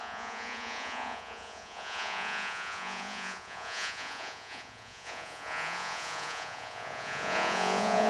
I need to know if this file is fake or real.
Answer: fake